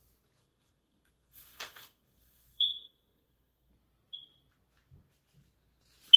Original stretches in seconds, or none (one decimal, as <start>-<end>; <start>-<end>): 0.0-0.4; 3.7-6.2